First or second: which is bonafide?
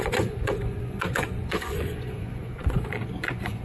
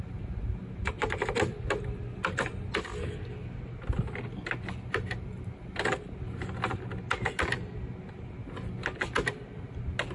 second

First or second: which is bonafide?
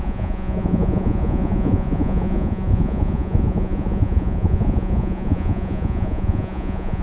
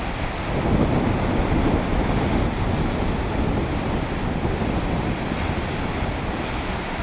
second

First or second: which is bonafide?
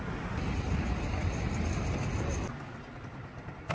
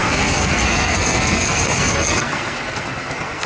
first